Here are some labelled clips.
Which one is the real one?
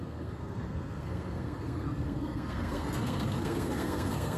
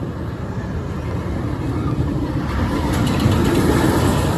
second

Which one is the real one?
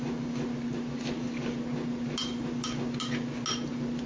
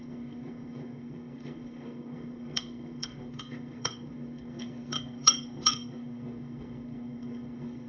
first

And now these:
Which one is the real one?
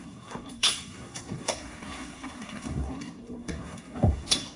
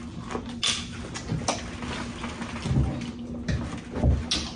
second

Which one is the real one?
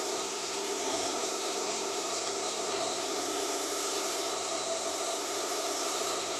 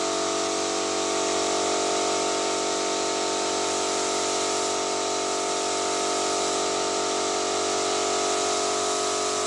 second